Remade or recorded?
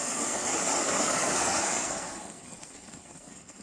remade